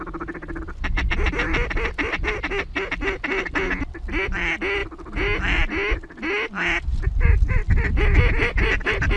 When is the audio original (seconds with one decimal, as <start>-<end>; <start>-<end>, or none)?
0.0-9.2